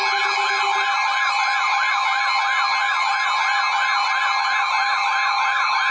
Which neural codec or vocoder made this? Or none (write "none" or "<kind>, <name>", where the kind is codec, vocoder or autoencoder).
none